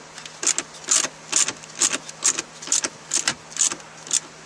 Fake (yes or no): no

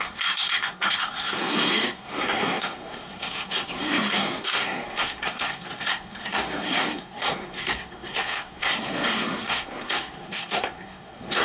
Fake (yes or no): yes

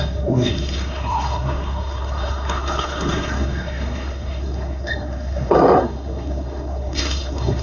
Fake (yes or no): yes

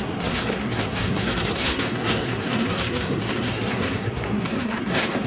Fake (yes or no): yes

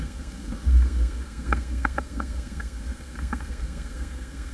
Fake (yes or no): yes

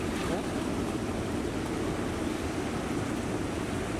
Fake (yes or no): no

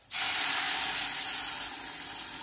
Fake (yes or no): no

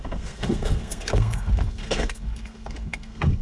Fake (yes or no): yes